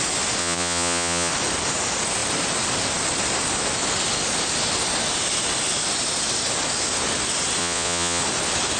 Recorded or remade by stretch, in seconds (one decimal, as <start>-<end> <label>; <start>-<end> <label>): 0.0-0.4 recorded; 0.4-1.3 remade; 1.3-7.6 recorded; 7.6-8.2 remade; 8.2-8.8 recorded